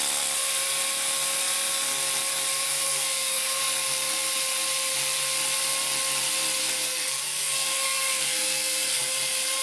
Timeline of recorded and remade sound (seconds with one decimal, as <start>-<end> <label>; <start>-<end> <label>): 0.0-2.7 recorded; 2.7-3.6 remade; 3.6-6.6 recorded; 6.6-9.0 remade; 9.0-9.6 recorded